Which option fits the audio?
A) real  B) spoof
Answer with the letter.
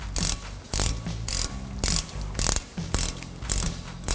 A